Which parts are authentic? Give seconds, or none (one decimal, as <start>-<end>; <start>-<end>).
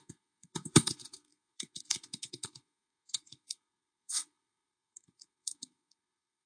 none